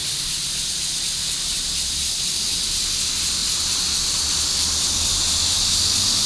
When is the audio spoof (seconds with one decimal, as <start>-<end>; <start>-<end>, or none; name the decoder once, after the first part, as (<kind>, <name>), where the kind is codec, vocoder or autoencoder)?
3.4-4.5 (vocoder, BigVGAN v2)